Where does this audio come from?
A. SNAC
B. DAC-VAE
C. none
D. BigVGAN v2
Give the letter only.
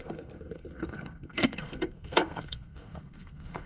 A